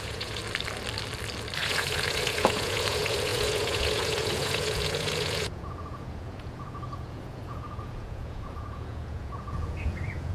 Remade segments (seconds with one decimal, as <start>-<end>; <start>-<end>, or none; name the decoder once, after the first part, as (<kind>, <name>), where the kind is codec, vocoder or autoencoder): 0.0-0.4 (vocoder, Vocos); 1.6-10.3